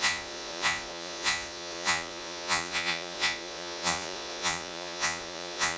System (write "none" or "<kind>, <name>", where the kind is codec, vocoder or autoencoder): vocoder, Vocos